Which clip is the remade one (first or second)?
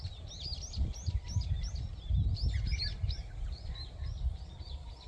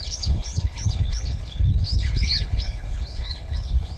second